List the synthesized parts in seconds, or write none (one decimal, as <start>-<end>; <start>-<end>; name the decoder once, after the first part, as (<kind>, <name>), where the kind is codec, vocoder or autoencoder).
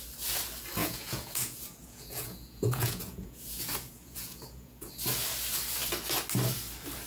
0.8-4.9 (vocoder, Vocos)